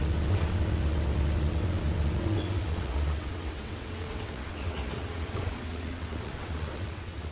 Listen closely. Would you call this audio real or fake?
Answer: fake